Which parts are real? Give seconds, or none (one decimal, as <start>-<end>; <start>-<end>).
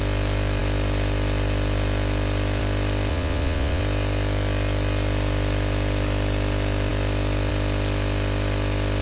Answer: 0.0-3.1; 3.8-9.0